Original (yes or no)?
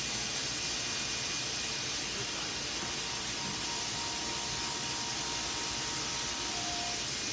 yes